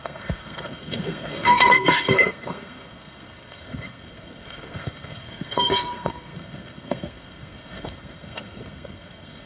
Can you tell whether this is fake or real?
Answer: fake